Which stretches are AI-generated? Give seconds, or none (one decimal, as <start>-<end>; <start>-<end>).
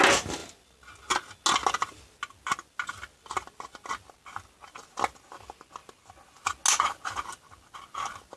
none